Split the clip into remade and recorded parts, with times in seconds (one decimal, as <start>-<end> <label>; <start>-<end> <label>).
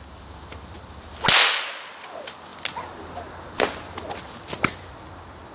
0.0-5.5 recorded